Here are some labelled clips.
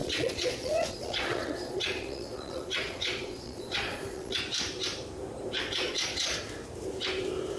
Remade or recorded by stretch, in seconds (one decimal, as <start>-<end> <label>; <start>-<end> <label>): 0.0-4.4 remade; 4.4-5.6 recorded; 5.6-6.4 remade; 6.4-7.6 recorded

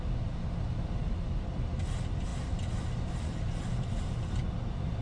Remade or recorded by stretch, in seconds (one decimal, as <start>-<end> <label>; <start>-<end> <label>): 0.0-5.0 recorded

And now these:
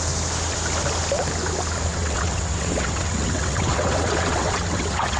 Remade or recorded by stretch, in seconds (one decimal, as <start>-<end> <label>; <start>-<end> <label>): 0.0-1.9 recorded; 1.9-5.2 remade

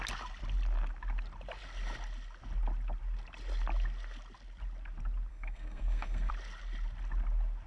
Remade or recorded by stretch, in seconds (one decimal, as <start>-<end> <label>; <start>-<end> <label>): 0.0-5.3 recorded; 5.3-6.3 remade; 6.3-7.7 recorded

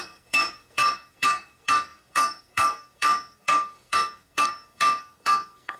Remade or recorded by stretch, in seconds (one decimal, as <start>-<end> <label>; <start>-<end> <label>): 0.0-5.8 remade